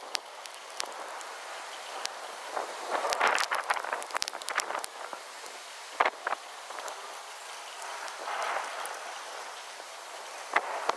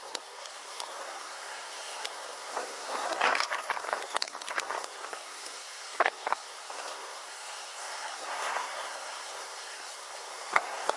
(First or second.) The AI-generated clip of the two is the second